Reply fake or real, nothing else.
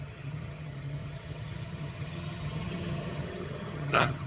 fake